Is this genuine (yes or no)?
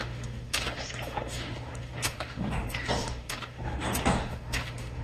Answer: no